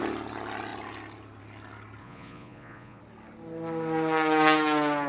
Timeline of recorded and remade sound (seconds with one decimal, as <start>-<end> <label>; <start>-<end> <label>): 0.0-2.0 recorded; 2.0-3.0 remade; 3.0-5.1 recorded